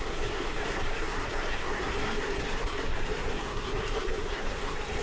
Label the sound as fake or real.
fake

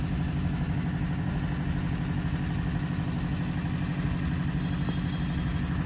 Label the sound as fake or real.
real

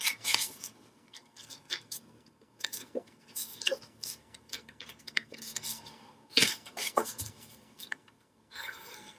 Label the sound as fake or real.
fake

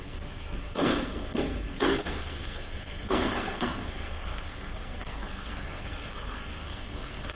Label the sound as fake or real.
fake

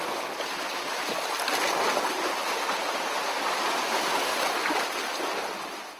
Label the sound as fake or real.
real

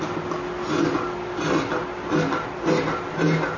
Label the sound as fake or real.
real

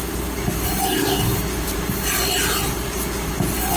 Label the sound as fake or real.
real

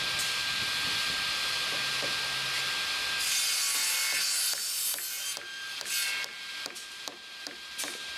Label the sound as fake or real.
real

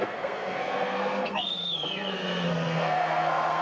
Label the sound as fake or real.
fake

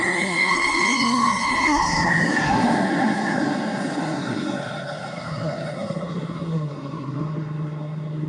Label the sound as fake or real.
fake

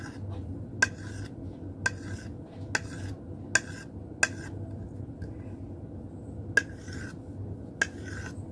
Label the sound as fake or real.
real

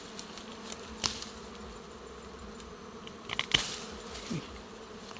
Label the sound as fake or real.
real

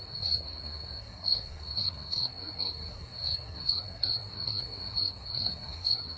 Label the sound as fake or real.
fake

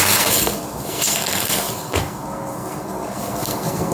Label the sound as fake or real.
fake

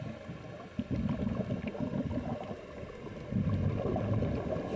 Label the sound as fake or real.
real